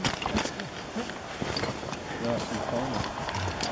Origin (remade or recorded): recorded